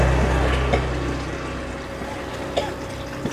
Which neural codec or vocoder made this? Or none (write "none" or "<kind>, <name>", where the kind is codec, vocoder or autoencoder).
none